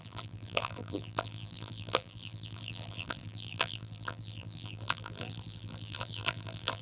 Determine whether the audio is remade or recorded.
remade